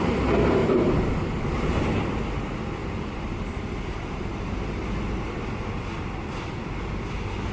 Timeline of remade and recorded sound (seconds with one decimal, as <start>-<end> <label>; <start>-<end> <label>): 0.0-0.6 recorded; 0.6-1.1 remade; 1.1-2.8 recorded; 2.8-5.4 remade; 5.4-7.5 recorded